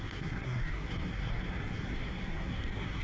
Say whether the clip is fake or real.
fake